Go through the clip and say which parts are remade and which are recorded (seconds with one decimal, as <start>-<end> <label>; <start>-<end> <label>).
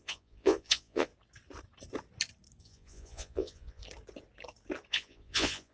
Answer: 0.0-1.1 remade; 1.1-2.6 recorded; 2.6-3.8 remade; 3.8-4.9 recorded; 4.9-5.7 remade